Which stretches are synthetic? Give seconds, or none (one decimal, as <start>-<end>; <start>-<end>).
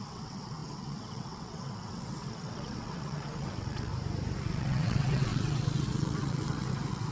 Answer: 0.0-3.9; 4.4-7.1